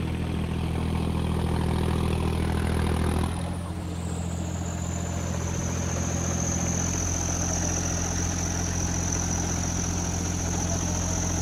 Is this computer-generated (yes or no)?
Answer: no